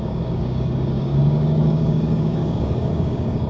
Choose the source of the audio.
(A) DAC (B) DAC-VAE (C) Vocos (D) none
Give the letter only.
A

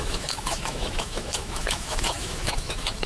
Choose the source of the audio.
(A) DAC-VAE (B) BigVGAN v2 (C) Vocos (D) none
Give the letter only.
A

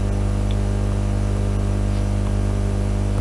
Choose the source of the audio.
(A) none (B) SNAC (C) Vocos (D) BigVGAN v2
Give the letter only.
A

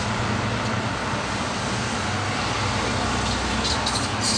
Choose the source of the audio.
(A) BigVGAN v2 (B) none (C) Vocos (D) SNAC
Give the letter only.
B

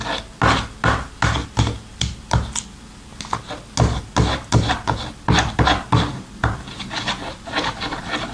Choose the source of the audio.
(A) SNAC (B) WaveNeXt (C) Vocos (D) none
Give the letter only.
D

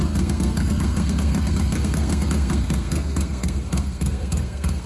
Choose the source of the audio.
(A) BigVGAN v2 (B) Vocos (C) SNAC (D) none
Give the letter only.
C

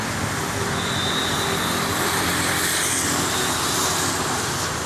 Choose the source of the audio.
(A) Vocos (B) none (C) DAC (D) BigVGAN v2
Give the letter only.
D